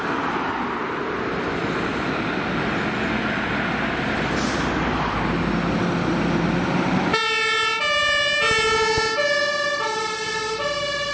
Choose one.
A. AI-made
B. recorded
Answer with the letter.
B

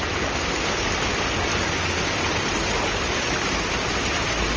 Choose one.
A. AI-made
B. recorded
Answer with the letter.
B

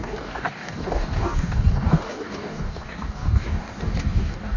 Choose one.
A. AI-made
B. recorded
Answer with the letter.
A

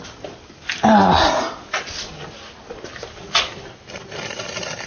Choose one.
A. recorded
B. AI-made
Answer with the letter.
A